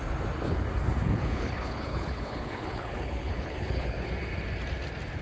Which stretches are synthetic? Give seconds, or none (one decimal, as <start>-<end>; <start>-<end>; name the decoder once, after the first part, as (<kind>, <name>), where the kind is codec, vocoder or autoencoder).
1.0-4.1 (codec, HILCodec)